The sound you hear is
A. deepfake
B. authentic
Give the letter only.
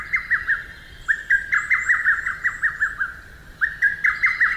A